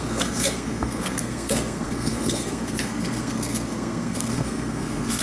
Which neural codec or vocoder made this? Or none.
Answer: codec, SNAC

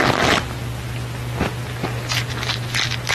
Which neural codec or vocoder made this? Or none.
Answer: none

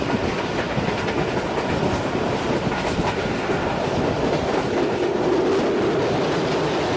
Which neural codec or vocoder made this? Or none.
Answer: none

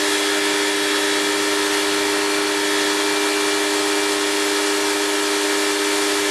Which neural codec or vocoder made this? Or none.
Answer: none